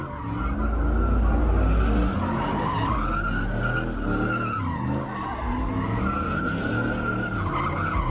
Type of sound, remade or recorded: recorded